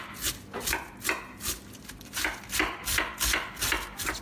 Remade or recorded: recorded